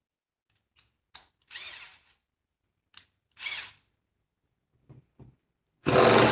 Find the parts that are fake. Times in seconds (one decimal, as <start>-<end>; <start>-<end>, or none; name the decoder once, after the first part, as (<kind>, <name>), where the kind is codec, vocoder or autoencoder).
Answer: none